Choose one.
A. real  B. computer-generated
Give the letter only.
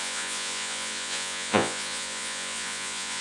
B